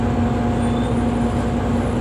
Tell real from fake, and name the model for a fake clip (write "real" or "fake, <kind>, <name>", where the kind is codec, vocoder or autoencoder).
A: real